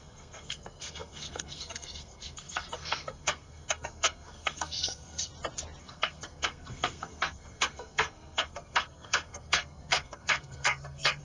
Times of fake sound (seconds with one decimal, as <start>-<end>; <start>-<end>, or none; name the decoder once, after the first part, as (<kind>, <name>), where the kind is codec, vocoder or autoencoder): 0.0-5.3 (codec, SNAC); 5.8-11.2